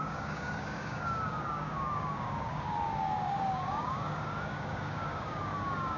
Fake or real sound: fake